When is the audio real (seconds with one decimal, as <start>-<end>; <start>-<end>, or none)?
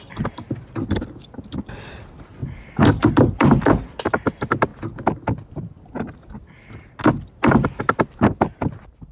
0.0-9.1